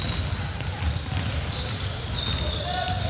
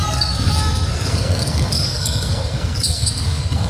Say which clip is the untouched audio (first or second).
first